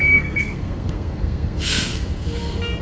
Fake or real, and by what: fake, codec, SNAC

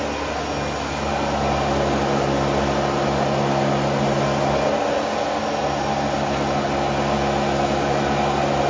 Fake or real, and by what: real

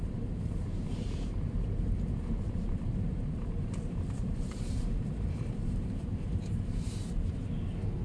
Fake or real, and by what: fake, vocoder, BigVGAN v2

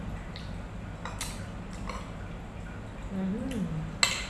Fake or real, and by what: real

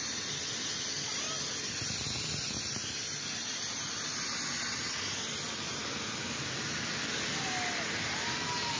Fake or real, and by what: real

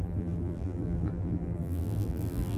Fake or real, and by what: fake, vocoder, BigVGAN v2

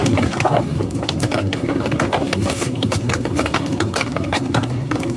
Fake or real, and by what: fake, codec, SNAC